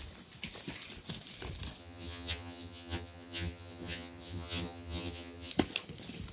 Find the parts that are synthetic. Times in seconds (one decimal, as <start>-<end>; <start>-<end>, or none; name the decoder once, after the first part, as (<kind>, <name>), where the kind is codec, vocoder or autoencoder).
1.8-5.5 (vocoder, HiFi-GAN)